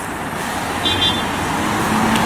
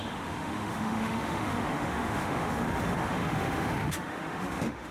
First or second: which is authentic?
first